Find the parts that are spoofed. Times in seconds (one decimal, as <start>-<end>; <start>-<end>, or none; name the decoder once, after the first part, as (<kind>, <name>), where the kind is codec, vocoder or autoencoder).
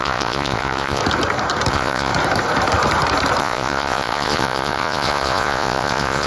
0.0-1.0 (vocoder, Vocos); 1.7-2.1; 3.4-6.3